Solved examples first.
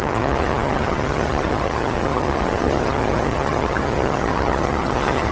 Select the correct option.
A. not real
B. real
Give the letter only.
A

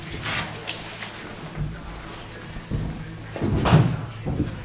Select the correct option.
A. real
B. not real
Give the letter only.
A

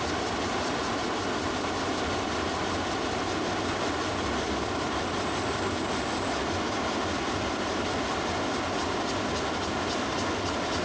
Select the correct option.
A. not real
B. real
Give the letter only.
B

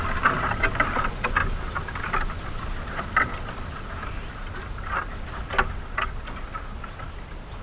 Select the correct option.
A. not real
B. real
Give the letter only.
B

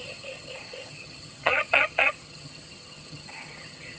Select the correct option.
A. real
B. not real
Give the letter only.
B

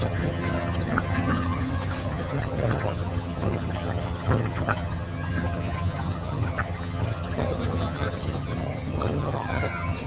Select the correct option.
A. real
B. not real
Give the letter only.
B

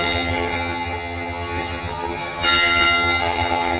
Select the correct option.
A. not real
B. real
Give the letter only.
A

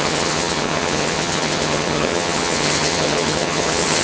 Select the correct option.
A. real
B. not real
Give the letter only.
B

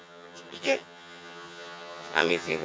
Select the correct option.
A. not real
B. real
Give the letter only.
A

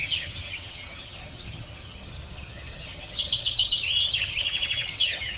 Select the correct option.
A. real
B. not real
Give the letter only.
B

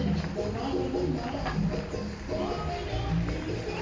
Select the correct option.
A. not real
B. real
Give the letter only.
B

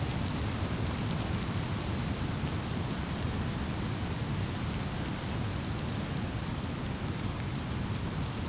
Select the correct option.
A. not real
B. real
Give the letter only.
B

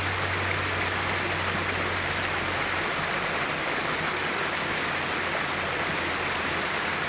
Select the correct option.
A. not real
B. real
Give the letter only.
B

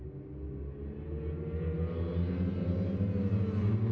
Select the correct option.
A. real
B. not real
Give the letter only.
A